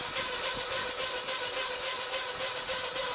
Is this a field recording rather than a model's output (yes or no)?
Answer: yes